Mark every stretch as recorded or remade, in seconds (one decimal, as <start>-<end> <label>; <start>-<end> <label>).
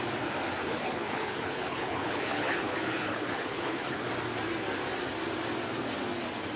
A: 0.0-0.6 recorded; 0.6-4.1 remade; 4.1-6.6 recorded